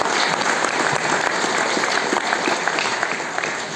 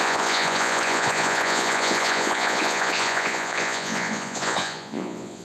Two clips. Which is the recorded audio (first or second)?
first